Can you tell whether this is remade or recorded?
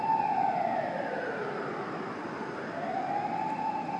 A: recorded